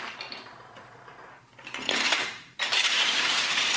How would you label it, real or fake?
fake